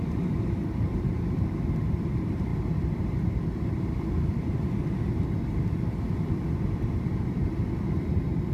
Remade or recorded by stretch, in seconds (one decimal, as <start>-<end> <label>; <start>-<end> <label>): 0.0-8.5 recorded